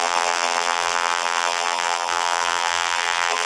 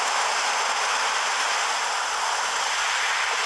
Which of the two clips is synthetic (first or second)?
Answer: first